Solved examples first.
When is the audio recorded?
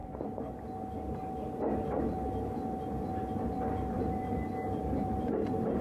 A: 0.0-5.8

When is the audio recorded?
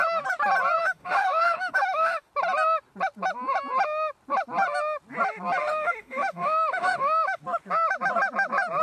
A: 0.0-0.8; 2.3-5.6; 7.4-8.8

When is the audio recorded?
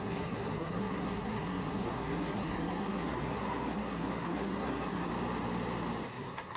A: 5.1-6.1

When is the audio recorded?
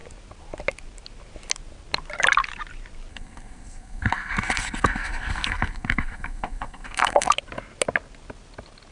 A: 0.0-3.1; 7.3-8.9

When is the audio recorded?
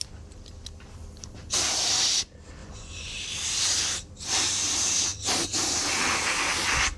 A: 0.0-2.6; 3.2-7.0